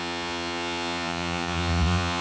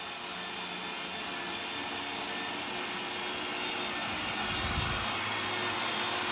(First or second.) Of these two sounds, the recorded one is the second